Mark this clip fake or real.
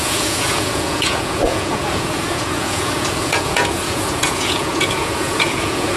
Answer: fake